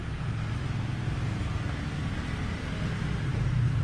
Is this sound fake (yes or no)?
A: no